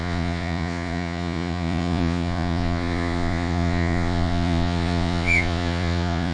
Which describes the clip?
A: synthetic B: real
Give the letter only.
A